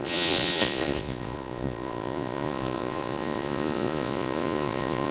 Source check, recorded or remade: remade